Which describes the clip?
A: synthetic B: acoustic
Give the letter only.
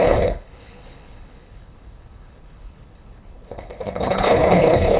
A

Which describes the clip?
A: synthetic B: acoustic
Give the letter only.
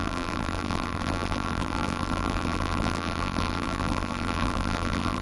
A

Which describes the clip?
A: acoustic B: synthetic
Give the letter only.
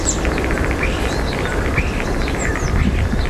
B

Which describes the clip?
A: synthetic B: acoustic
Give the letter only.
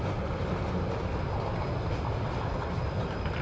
B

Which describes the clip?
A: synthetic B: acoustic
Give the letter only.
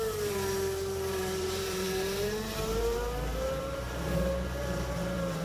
A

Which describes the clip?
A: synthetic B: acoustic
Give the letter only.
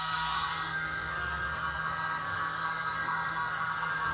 A